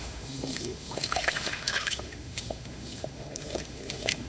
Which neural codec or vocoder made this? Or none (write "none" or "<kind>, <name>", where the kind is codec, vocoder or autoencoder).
autoencoder, DAC-VAE